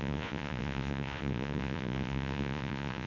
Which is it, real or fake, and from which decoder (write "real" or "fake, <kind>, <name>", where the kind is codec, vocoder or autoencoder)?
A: fake, vocoder, Vocos